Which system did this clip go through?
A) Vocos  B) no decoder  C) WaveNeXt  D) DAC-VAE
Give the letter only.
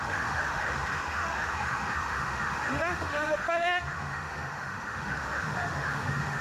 D